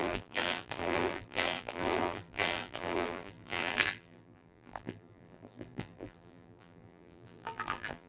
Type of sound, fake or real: fake